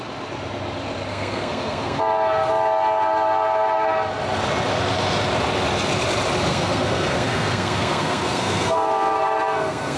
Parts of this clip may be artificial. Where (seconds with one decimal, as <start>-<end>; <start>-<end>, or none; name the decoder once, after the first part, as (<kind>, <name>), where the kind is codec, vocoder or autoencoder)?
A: 1.1-2.0 (codec, SNAC); 6.5-10.0